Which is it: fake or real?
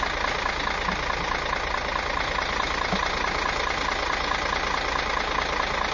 real